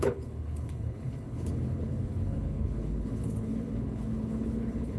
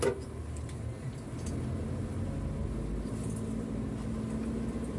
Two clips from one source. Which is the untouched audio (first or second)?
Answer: second